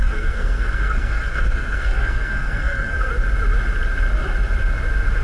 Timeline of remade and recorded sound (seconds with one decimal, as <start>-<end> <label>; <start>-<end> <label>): 0.0-3.1 remade; 3.1-5.2 recorded